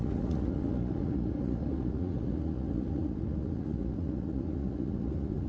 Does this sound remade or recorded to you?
remade